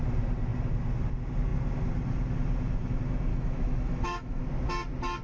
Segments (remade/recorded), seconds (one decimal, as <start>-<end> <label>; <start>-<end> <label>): 0.0-3.3 recorded; 3.3-4.4 remade; 4.4-5.2 recorded